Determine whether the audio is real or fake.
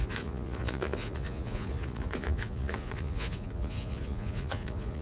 fake